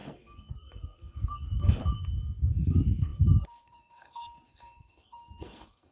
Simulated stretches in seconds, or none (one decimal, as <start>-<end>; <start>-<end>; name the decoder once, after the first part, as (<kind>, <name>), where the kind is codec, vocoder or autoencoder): 0.0-1.8 (codec, SNAC); 2.5-5.9